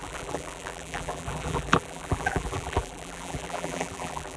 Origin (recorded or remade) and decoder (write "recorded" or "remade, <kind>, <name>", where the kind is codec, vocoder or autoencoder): remade, vocoder, BigVGAN v2